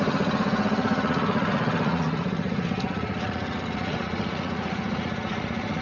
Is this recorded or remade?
remade